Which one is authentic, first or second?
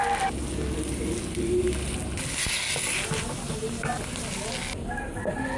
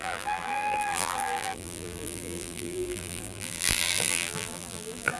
first